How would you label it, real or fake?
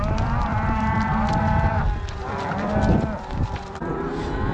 fake